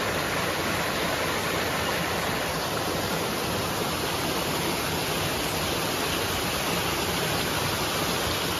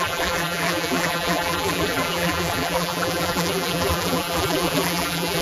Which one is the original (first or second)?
first